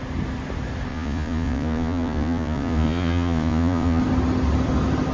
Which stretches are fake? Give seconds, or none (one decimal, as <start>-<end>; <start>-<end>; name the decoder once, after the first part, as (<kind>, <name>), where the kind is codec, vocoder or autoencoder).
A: 0.9-4.0 (vocoder, Vocos)